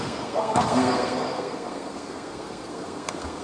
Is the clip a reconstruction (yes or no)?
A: yes